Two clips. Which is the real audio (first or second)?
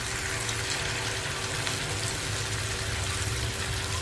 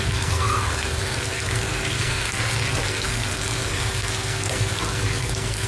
first